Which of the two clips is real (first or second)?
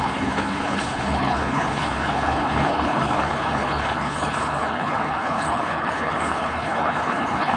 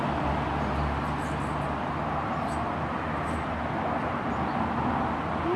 second